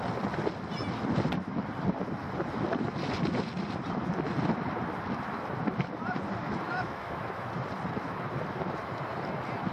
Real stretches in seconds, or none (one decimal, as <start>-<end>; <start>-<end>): 0.0-6.4; 7.5-9.7